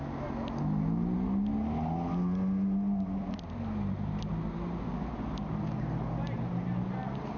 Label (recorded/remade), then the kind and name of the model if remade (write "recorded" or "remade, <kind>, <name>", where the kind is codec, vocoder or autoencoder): recorded